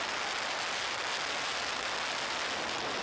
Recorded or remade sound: recorded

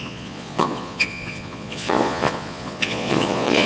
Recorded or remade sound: remade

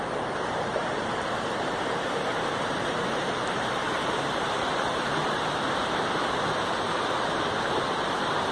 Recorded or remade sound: remade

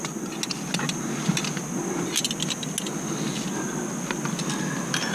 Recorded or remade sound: recorded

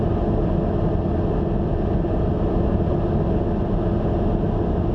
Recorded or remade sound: recorded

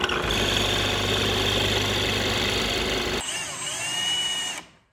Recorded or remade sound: recorded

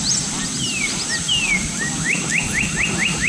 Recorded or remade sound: recorded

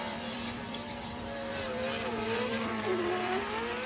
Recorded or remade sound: remade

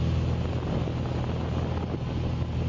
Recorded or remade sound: recorded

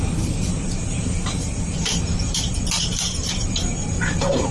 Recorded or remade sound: remade